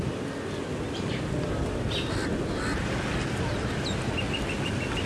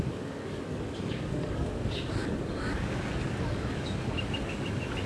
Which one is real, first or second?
first